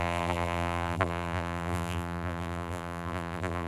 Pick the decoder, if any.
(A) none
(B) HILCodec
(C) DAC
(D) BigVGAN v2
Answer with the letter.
D